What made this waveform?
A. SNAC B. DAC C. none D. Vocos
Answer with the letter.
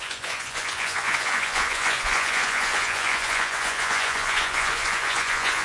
D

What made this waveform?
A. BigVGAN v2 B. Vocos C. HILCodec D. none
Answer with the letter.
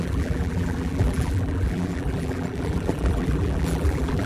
A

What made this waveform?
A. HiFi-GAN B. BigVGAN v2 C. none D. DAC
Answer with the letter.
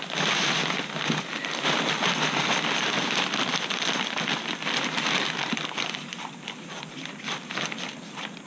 C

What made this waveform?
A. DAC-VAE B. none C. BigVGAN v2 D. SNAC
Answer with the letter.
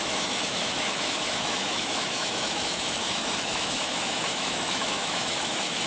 A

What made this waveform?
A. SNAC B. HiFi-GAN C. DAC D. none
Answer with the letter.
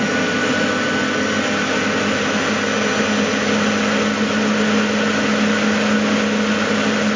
D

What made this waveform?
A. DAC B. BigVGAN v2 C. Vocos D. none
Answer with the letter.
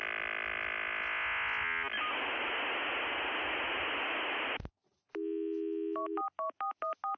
D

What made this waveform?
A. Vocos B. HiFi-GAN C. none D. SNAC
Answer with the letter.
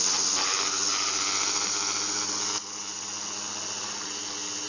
C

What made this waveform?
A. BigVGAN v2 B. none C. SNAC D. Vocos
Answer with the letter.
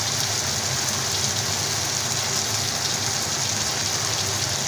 B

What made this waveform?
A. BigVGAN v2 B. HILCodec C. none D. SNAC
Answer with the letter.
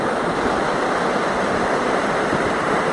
A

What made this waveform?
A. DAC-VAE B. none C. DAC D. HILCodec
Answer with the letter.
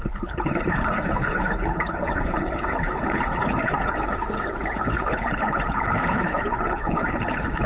D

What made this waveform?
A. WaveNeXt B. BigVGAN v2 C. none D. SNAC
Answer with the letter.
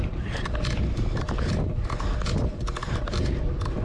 B